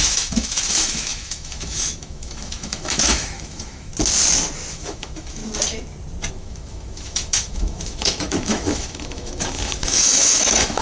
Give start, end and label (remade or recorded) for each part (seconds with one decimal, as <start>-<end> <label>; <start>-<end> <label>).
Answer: 0.0-3.9 remade; 3.9-4.7 recorded; 4.7-5.4 remade; 5.4-6.3 recorded; 6.3-10.8 remade